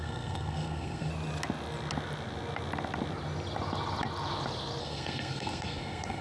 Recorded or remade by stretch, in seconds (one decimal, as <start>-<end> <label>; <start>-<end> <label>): 0.0-1.1 remade; 1.1-4.8 recorded; 4.8-6.2 remade